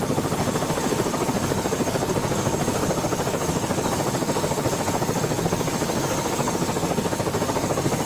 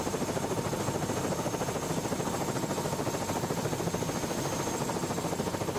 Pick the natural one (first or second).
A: second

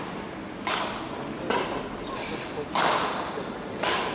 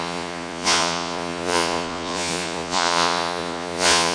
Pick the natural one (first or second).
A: first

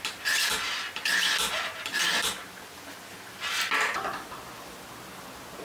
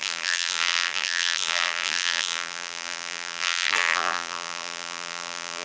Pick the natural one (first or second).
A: first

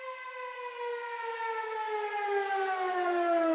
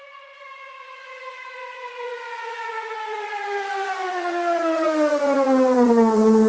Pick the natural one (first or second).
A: first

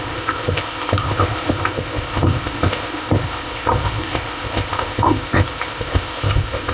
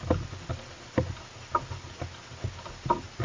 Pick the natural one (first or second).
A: second